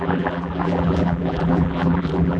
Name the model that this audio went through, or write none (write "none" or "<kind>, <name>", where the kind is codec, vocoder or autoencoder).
vocoder, BigVGAN v2